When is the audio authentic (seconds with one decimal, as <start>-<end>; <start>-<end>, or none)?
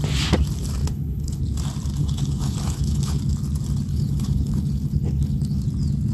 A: 0.0-0.8; 1.4-2.0; 3.2-3.9; 5.6-6.1